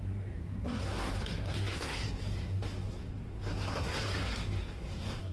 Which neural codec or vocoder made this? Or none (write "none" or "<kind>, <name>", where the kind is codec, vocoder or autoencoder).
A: codec, SNAC